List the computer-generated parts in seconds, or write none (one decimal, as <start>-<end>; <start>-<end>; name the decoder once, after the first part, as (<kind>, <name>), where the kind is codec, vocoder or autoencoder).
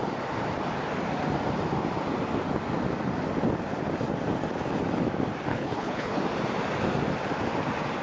5.5-6.2 (codec, HILCodec)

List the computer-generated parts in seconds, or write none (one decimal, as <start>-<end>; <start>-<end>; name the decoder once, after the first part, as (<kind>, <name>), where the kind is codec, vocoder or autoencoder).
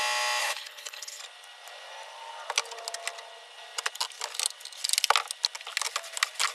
0.4-1.2 (codec, HILCodec)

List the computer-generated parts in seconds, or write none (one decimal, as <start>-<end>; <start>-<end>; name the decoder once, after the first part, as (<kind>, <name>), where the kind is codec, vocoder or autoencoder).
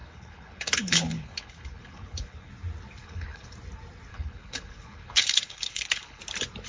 0.0-2.5 (codec, HILCodec); 3.0-3.5; 4.1-6.2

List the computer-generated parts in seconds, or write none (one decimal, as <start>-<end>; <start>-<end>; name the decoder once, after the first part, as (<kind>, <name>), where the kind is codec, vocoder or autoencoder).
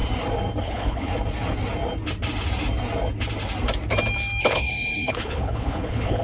0.6-1.1 (codec, HILCodec); 4.4-6.2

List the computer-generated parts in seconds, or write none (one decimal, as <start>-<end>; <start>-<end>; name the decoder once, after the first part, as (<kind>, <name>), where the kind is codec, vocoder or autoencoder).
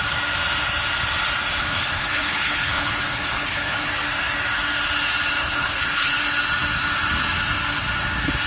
1.6-3.9 (codec, HILCodec); 5.4-6.1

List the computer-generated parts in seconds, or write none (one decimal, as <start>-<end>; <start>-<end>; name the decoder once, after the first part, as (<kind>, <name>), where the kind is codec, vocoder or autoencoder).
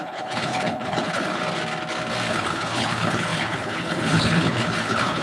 0.0-1.4 (codec, HILCodec); 2.3-5.2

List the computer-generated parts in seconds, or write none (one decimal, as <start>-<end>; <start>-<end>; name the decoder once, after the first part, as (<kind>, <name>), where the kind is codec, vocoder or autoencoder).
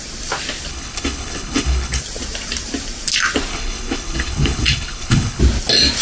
0.7-2.0 (codec, HILCodec); 3.5-5.4